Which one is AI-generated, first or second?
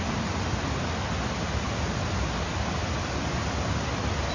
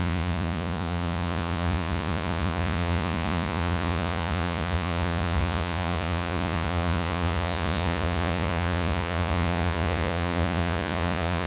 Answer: second